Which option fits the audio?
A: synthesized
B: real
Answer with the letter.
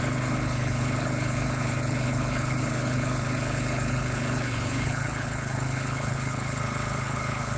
A